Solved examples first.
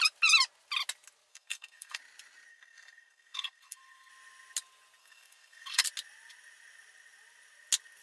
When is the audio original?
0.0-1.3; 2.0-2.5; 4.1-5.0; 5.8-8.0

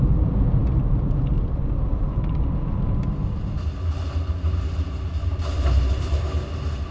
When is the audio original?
0.0-6.9